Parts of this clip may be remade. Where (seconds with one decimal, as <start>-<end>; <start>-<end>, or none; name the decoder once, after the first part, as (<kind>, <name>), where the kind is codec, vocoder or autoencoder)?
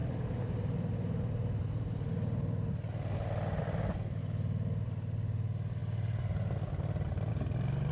none